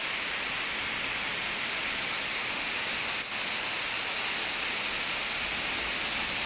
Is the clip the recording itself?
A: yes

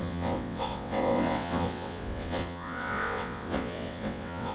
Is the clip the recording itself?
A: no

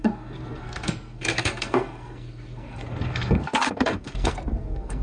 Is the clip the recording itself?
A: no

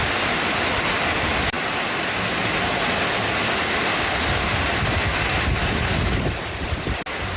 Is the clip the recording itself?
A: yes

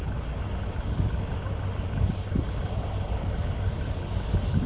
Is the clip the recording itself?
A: yes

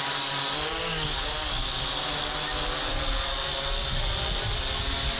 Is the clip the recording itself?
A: yes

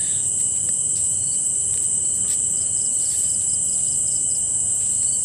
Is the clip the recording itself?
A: no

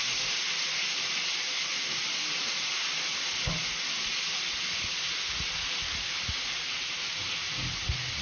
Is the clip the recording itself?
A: yes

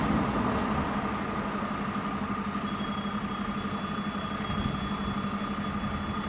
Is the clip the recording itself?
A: yes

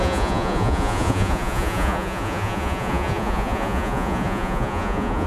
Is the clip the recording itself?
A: no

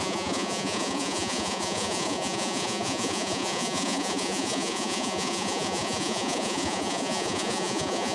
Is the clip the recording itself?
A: no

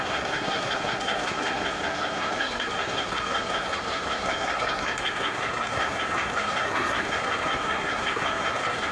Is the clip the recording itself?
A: no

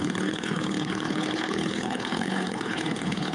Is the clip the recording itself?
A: no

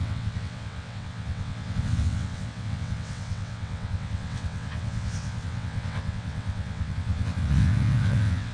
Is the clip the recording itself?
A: no